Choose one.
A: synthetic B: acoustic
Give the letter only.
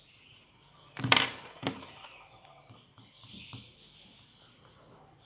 A